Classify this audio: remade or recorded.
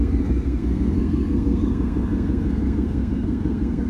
remade